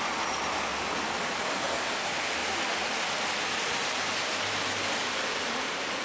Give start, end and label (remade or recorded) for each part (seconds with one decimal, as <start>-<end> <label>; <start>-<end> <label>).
0.0-6.0 recorded

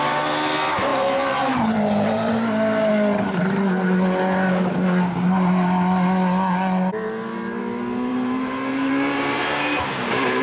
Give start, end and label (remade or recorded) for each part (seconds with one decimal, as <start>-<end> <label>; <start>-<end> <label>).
0.0-0.9 recorded; 0.9-2.3 remade; 2.3-8.1 recorded; 8.1-10.4 remade

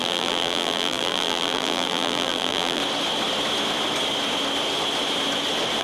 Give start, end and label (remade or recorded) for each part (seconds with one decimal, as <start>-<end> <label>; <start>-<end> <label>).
0.0-2.8 remade; 2.8-5.8 recorded

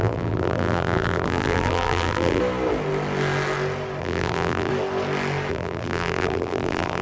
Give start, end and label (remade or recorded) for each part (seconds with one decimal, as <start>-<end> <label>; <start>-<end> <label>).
0.0-2.4 remade; 2.4-4.0 recorded; 4.0-4.7 remade; 4.7-5.5 recorded; 5.5-7.0 remade

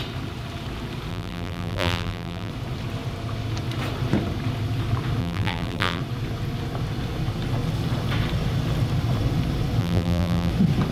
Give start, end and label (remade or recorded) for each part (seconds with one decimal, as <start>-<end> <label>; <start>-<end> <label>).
0.0-1.1 recorded; 1.1-2.5 remade; 2.5-5.2 recorded; 5.2-6.0 remade; 6.0-9.8 recorded; 9.8-10.5 remade; 10.5-10.9 recorded